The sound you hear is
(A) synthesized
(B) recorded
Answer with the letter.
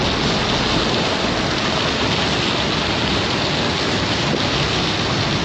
B